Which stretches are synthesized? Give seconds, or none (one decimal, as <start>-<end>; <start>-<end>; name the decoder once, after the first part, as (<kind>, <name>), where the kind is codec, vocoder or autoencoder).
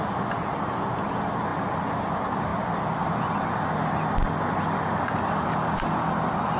none